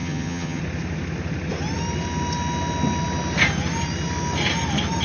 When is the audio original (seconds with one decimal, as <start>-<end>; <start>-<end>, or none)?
0.6-5.0